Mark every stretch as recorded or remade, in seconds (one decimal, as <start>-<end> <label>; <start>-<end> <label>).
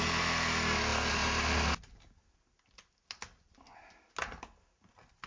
0.0-5.3 recorded